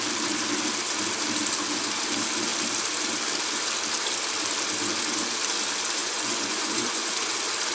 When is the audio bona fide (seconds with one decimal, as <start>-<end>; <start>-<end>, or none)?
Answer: 0.0-6.0; 7.1-7.7